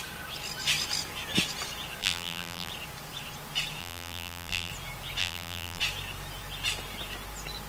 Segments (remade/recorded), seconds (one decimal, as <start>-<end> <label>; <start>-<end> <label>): 0.0-2.0 recorded; 2.0-2.7 remade; 2.7-3.8 recorded; 3.8-4.7 remade; 4.7-5.2 recorded; 5.2-5.8 remade; 5.8-7.7 recorded